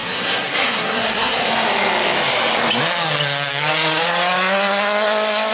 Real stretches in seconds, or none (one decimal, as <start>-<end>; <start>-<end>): 1.5-5.5